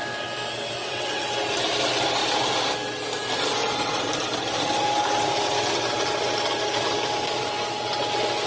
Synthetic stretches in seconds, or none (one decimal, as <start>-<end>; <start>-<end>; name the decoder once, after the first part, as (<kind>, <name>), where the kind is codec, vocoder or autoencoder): 0.8-1.3 (vocoder, WaveNeXt)